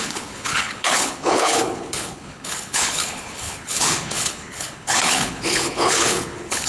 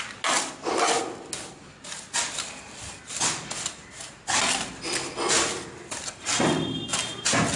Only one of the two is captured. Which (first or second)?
second